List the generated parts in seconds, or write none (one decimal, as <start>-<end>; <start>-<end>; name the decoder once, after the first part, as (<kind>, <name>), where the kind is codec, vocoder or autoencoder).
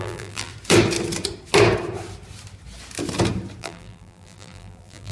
0.0-0.5 (vocoder, BigVGAN v2); 3.6-5.1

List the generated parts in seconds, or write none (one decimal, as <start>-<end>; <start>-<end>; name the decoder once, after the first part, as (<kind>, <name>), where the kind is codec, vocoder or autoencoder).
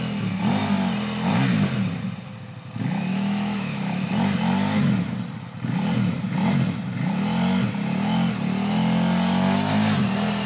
3.1-4.1 (autoencoder, DAC-VAE)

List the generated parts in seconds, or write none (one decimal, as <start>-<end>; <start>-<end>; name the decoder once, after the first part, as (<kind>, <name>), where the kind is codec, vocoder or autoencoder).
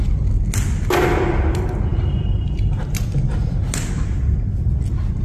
none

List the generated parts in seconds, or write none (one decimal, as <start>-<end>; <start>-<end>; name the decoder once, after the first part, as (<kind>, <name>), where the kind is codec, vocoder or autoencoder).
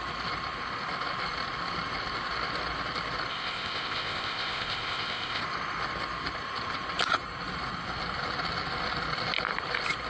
3.3-5.4 (codec, ZipCodec)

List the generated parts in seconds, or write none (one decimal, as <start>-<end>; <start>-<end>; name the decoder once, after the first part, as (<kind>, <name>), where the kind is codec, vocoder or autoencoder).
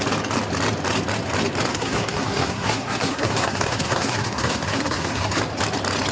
1.7-5.4 (codec, SNAC)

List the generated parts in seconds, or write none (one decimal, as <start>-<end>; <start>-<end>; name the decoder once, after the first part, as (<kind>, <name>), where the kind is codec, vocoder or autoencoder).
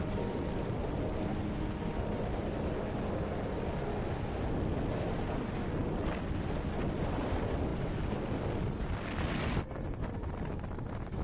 none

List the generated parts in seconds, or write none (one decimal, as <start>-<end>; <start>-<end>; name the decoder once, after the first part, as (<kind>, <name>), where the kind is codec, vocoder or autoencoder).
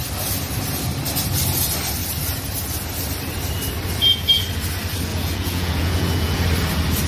5.1-6.4 (vocoder, Vocos)